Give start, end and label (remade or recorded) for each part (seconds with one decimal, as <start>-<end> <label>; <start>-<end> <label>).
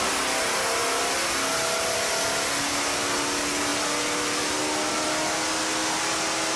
0.0-6.6 recorded